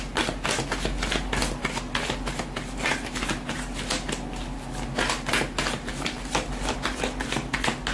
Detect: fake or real real